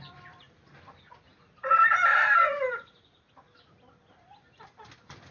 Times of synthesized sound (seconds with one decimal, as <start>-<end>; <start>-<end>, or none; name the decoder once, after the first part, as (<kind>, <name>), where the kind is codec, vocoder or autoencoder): none